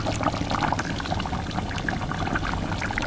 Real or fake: real